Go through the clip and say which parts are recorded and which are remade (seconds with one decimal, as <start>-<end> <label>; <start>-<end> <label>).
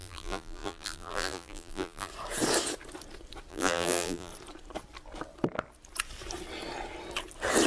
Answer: 0.0-2.1 remade; 2.1-3.5 recorded; 3.5-4.3 remade; 4.3-7.7 recorded